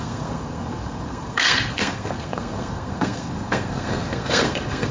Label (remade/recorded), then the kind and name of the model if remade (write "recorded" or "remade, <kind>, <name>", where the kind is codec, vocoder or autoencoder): remade, codec, SNAC